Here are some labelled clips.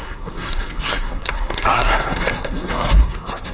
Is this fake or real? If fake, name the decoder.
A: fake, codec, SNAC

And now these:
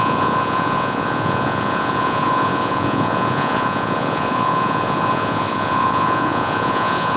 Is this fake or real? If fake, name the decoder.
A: fake, vocoder, Vocos